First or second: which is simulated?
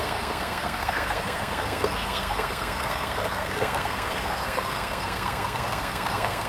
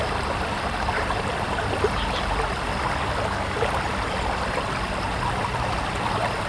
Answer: first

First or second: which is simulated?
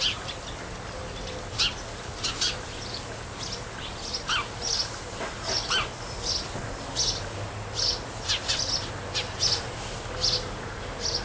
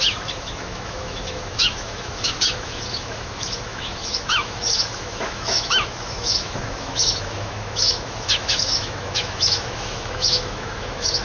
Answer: second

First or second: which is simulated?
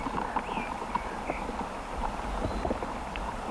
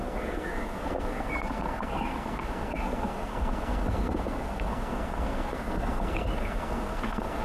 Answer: second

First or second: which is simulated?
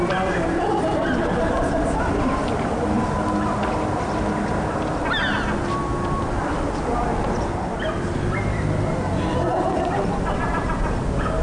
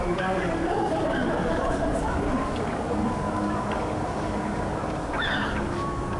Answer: second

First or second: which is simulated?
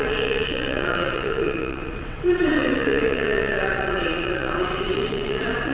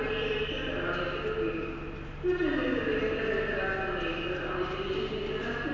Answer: first